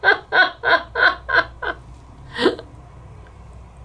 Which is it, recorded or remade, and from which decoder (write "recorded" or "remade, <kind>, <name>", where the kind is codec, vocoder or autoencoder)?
recorded